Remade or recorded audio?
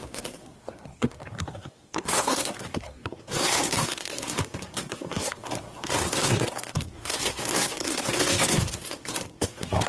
remade